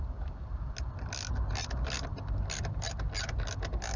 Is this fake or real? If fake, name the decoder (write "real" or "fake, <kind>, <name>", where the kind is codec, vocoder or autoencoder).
real